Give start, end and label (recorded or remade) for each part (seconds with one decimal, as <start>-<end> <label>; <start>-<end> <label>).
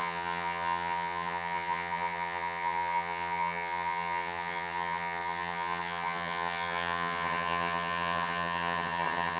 0.0-9.4 remade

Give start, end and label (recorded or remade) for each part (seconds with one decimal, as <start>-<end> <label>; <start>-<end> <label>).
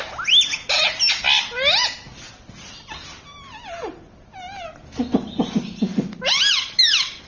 0.0-7.3 recorded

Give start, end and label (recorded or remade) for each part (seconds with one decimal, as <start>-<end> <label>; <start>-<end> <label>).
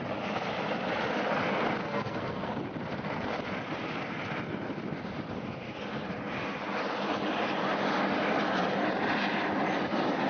0.0-1.8 recorded; 1.8-2.5 remade; 2.5-10.3 recorded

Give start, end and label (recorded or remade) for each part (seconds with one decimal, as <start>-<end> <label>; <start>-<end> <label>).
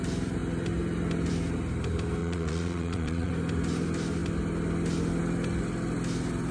0.0-2.2 recorded; 2.2-3.3 remade; 3.3-6.5 recorded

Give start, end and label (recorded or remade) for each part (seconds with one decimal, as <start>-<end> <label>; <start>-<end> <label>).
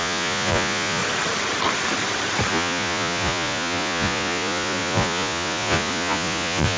0.0-1.0 remade; 1.0-2.5 recorded; 2.5-6.8 remade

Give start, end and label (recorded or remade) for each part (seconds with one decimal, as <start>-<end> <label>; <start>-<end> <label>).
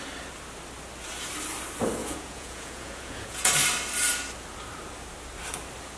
0.0-2.0 recorded; 2.0-3.5 remade; 3.5-6.0 recorded